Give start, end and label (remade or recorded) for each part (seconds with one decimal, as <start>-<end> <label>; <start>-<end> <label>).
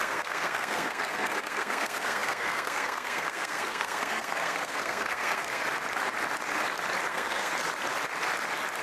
0.0-5.6 remade; 5.6-7.1 recorded; 7.1-7.5 remade; 7.5-8.8 recorded